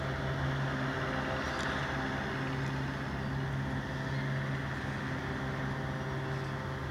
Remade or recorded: recorded